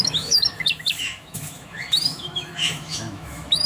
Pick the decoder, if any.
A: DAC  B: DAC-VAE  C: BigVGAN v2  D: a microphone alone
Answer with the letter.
B